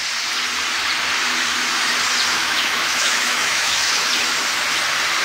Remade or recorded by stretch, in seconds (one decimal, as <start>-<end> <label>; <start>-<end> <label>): 0.0-2.3 recorded; 2.3-4.1 remade; 4.1-5.2 recorded